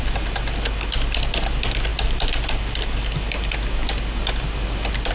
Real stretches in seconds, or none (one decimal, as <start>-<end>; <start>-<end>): 0.0-5.1